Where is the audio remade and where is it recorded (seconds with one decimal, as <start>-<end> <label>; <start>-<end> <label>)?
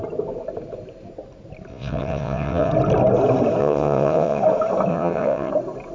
0.0-1.7 recorded; 1.7-2.7 remade; 2.7-3.6 recorded; 3.6-4.4 remade; 4.4-4.9 recorded; 4.9-5.5 remade; 5.5-5.9 recorded